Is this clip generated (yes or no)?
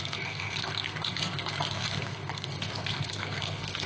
yes